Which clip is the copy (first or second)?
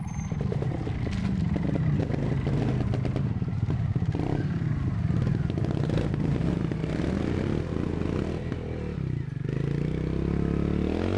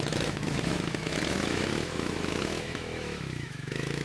second